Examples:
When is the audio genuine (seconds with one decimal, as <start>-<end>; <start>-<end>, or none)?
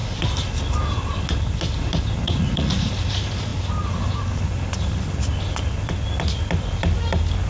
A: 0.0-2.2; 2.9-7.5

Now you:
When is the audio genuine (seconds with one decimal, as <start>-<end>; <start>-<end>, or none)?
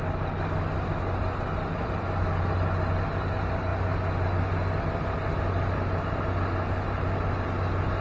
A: 0.0-8.0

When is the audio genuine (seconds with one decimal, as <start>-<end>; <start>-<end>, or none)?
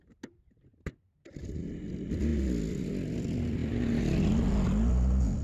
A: 0.0-5.4